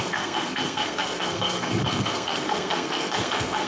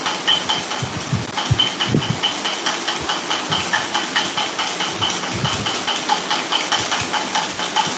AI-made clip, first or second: first